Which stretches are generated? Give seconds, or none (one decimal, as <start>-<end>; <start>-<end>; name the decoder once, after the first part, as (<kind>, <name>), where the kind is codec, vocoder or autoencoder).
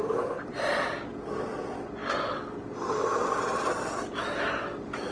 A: none